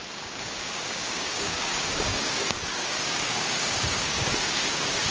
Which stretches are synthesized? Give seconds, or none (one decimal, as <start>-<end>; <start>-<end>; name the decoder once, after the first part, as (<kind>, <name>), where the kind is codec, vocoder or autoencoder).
0.0-5.1 (codec, DAC)